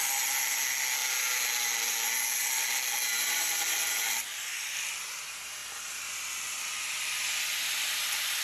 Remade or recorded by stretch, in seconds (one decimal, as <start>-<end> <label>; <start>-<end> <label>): 0.0-8.4 recorded